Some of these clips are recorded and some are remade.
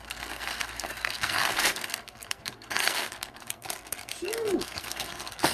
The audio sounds remade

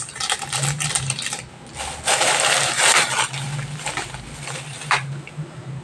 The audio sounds recorded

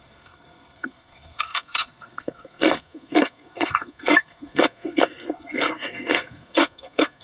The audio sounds remade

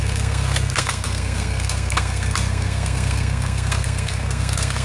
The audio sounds remade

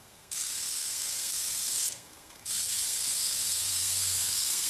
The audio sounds remade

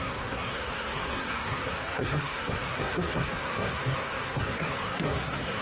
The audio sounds remade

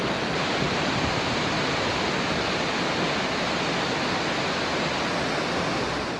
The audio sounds recorded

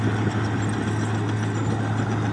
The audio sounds recorded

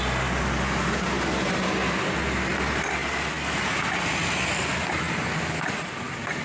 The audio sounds recorded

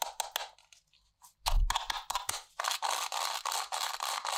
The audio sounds recorded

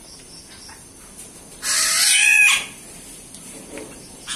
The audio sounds recorded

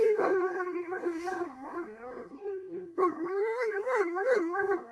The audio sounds remade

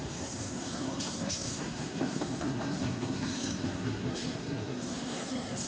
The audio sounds remade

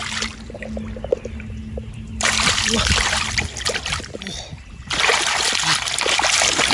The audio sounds recorded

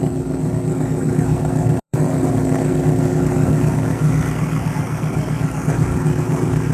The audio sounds remade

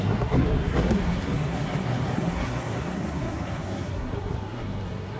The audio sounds remade